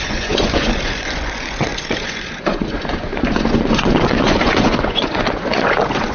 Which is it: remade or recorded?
remade